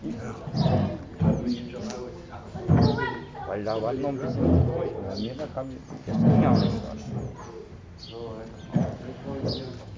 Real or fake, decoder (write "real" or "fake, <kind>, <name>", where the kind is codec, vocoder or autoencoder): real